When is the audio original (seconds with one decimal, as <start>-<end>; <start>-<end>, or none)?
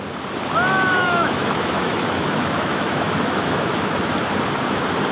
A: 0.0-1.0; 4.0-5.1